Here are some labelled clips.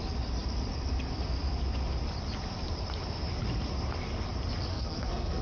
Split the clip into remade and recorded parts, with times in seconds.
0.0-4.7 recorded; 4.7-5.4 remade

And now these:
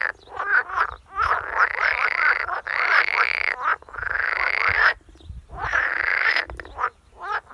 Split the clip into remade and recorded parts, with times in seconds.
0.0-7.5 recorded

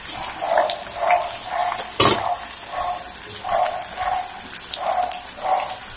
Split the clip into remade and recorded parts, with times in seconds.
0.0-6.0 recorded

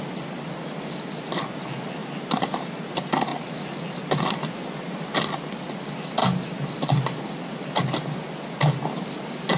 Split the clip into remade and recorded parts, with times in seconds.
0.0-2.0 recorded; 2.0-2.9 remade; 2.9-3.3 recorded; 3.3-3.8 remade; 3.8-9.6 recorded

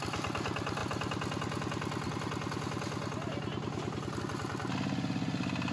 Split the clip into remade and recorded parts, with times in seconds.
0.0-5.7 recorded

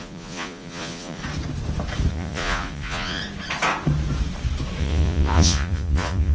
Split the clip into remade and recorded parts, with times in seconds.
0.0-1.2 remade; 1.2-2.1 recorded; 2.1-3.2 remade; 3.2-4.8 recorded; 4.8-6.3 remade